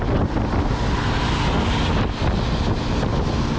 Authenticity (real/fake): real